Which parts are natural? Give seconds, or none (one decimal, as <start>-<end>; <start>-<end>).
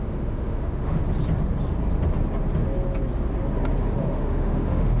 1.0-4.0